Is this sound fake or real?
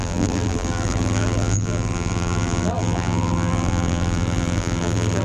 fake